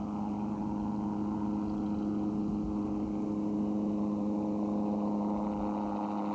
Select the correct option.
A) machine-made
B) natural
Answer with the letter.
B